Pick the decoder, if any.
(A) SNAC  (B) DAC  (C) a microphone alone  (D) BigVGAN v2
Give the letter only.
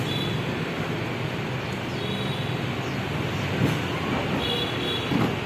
C